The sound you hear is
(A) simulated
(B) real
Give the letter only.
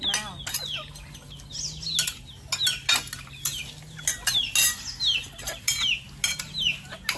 B